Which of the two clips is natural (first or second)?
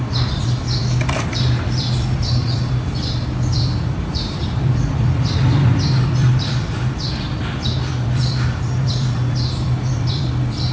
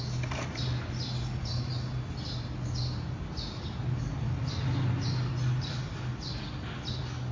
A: second